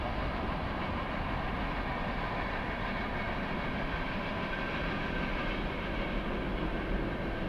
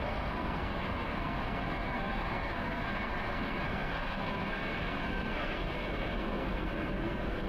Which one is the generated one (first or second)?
second